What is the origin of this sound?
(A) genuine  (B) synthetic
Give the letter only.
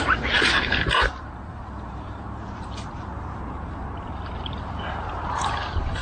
B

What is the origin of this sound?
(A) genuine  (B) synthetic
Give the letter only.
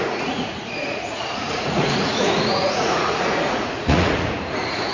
B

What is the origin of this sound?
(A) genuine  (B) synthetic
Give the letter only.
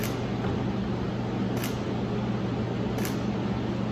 A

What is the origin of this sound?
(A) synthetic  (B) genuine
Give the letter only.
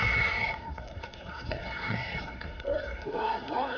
A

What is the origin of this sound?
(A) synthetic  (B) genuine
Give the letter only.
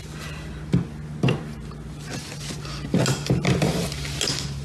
B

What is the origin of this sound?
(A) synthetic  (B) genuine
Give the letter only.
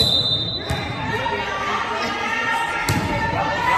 B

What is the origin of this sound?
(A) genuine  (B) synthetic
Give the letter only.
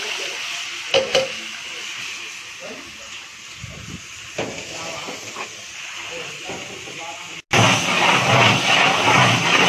A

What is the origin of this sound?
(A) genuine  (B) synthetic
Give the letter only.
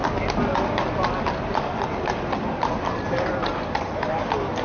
A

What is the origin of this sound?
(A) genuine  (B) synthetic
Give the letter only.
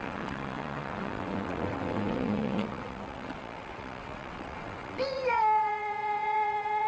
B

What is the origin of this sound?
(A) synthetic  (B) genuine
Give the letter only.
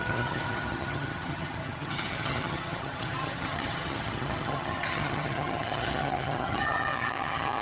A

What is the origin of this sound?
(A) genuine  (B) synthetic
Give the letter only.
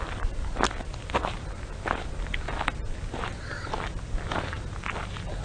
A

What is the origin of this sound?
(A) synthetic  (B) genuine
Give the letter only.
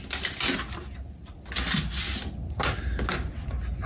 B